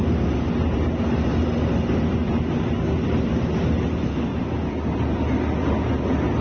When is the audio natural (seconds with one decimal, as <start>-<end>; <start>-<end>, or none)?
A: 0.0-6.4